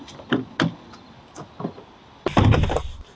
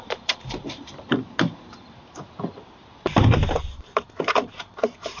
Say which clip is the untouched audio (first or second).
first